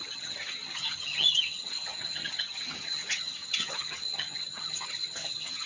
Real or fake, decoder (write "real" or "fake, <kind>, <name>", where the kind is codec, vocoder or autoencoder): fake, vocoder, HiFi-GAN